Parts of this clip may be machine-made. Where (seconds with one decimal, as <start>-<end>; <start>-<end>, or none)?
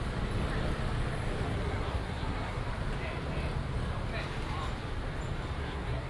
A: 1.5-2.6; 5.6-6.1